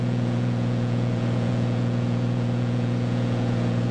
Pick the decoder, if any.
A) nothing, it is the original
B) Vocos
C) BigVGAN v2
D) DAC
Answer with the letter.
B